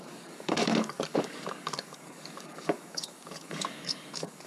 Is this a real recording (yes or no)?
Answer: no